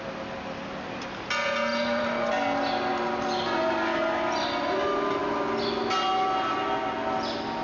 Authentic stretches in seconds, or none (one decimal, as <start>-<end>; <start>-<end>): 0.0-1.7; 2.3-7.6